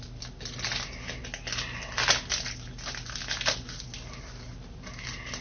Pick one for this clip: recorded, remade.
recorded